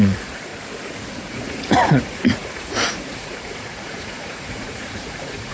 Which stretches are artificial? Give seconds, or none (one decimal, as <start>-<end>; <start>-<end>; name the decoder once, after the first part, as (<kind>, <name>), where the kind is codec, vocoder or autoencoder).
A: 0.0-0.5 (vocoder, Vocos); 1.1-5.5